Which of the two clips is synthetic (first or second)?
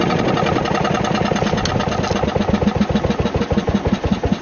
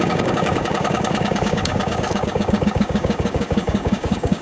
second